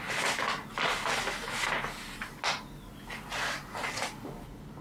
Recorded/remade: recorded